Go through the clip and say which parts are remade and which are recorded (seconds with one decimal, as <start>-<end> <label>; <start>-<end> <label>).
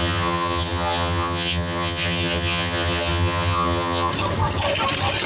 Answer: 0.0-4.1 remade; 4.1-5.3 recorded